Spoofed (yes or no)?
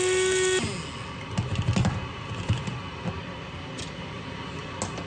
no